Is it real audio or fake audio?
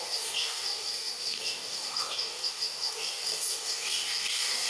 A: fake